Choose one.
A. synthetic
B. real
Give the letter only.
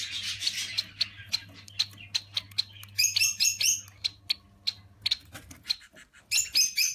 B